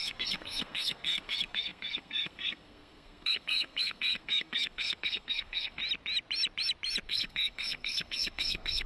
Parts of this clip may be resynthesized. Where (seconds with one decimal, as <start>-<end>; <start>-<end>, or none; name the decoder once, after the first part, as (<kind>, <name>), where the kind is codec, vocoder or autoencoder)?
0.0-5.8 (codec, SNAC); 7.1-8.9